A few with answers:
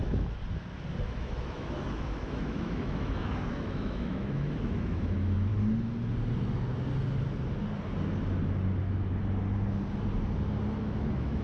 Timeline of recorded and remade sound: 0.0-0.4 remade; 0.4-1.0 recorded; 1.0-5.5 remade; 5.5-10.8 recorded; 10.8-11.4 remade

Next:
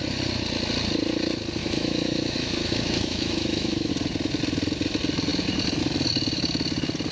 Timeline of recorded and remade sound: 0.0-1.6 recorded; 1.6-3.9 remade; 3.9-7.1 recorded

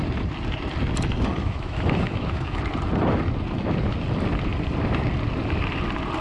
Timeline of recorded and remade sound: 0.0-1.4 recorded; 1.4-2.6 remade; 2.6-6.2 recorded

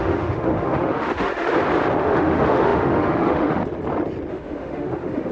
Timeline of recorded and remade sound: 0.0-1.5 remade; 1.5-2.0 recorded; 2.0-3.6 remade; 3.6-4.3 recorded; 4.3-5.3 remade

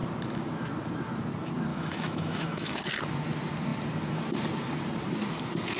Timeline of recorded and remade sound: 0.0-1.7 recorded; 1.7-2.8 remade; 2.8-5.8 recorded

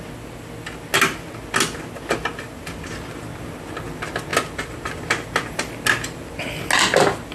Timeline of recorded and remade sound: 0.0-7.3 recorded

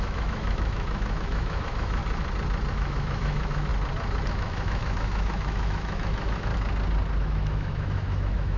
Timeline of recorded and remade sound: 0.0-2.0 remade; 2.0-2.7 recorded; 2.7-3.7 remade; 3.7-4.3 recorded; 4.3-6.5 remade; 6.5-7.2 recorded; 7.2-8.6 remade